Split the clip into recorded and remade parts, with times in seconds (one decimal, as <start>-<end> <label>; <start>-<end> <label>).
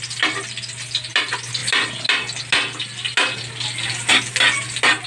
0.0-5.1 recorded